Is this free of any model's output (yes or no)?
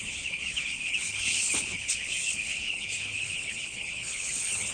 no